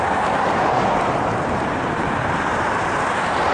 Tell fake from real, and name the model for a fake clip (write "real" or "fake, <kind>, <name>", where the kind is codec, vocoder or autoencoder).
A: fake, vocoder, BigVGAN v2